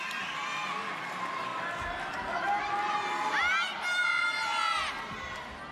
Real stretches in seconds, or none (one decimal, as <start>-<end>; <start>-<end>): 0.0-5.7